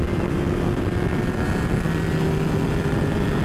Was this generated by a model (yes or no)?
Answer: no